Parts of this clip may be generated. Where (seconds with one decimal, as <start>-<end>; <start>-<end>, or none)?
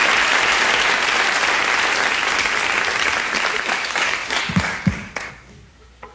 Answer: 3.7-6.1